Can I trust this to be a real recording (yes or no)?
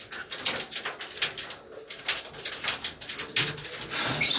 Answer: yes